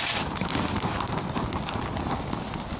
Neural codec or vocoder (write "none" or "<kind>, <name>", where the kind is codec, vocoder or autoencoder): none